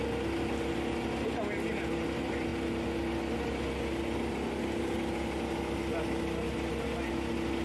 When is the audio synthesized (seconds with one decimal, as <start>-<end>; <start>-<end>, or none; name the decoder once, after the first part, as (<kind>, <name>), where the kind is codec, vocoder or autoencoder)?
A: none

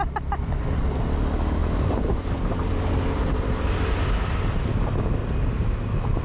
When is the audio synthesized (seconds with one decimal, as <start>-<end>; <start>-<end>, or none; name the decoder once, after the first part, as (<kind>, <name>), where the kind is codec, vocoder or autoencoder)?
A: 1.6-4.7 (vocoder, BigVGAN v2)

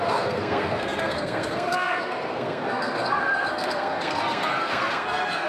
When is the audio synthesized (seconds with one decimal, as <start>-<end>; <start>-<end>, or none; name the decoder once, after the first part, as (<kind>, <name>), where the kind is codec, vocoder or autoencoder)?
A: 0.0-5.5 (codec, SNAC)

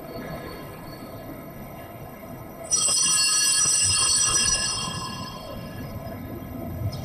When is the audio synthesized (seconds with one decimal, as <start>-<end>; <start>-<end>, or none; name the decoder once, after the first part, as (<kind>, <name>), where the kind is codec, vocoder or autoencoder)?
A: 0.0-3.1 (codec, HILCodec); 3.6-7.0

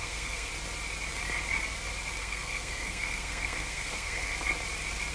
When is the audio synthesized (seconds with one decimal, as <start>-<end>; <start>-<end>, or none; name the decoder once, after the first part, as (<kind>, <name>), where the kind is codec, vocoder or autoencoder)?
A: 0.0-0.5 (codec, SNAC); 2.2-4.3

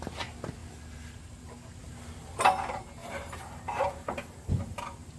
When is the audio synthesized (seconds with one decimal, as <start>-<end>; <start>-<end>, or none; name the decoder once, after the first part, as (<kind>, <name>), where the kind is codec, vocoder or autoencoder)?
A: 3.0-4.8 (vocoder, BigVGAN v2)

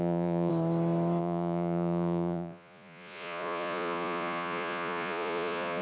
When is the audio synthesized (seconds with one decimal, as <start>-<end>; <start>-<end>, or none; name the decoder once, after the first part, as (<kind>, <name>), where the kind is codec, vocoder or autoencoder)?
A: 0.0-0.5 (vocoder, Vocos); 1.2-5.8